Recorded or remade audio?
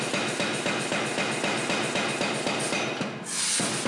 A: recorded